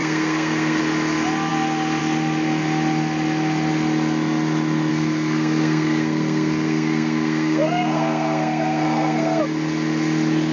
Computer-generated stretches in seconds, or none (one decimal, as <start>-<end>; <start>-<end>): 0.0-0.8; 4.9-9.4